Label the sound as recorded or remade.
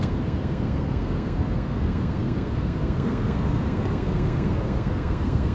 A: remade